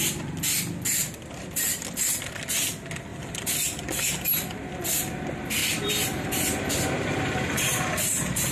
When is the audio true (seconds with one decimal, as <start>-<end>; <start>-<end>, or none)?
0.0-1.0; 2.3-3.1; 4.1-5.6